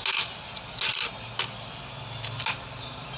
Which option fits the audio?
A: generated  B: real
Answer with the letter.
B